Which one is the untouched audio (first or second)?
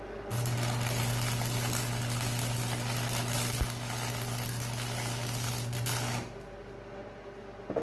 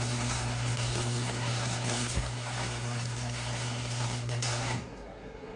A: first